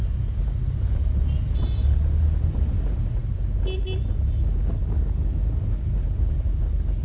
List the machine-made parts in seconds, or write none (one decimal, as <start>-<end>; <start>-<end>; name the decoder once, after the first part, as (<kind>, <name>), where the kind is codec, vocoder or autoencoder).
none